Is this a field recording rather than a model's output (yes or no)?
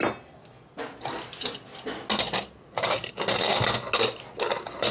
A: yes